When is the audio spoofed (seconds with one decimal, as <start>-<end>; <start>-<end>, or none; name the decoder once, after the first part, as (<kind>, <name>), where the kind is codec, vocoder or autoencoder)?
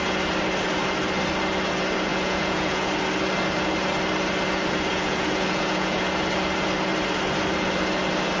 2.1-2.9 (vocoder, Vocos); 4.9-6.0